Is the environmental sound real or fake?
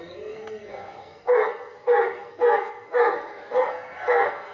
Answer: fake